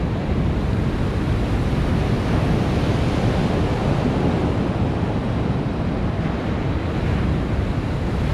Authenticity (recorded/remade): recorded